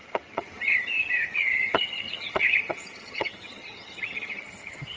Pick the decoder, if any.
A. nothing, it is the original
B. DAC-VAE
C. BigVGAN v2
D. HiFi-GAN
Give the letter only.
D